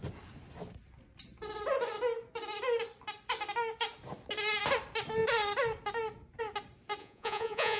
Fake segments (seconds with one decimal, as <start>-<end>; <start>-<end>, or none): 7.0-7.8